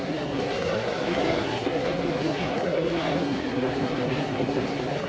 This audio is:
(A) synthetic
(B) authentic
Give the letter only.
A